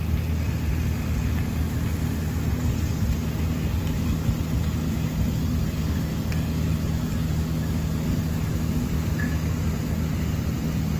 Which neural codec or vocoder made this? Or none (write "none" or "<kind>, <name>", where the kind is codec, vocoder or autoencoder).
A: none